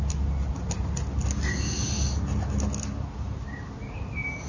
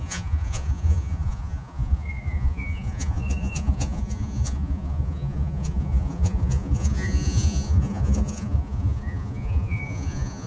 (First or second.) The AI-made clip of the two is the second